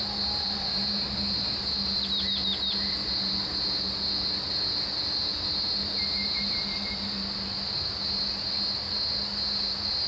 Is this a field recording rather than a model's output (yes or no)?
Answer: yes